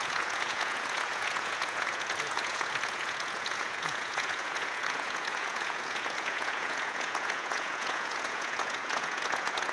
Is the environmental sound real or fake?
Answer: fake